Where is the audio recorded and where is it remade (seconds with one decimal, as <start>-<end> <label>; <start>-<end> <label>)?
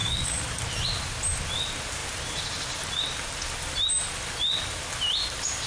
0.0-0.6 remade; 0.6-5.7 recorded